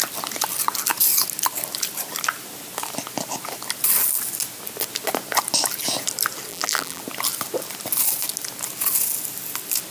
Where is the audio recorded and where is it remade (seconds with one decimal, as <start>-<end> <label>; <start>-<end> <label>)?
0.0-6.5 recorded; 6.5-7.0 remade; 7.0-9.9 recorded